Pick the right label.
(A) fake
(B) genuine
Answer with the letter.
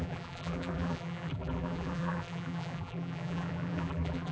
A